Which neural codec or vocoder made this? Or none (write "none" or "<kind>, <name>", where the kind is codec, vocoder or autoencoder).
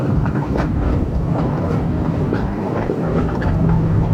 codec, DAC